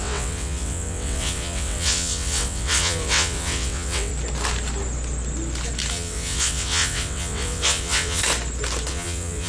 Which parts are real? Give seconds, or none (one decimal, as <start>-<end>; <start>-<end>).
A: 4.1-5.9; 8.2-8.9